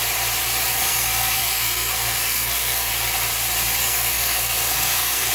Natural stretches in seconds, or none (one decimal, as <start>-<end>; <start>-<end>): 0.0-0.7; 2.9-3.8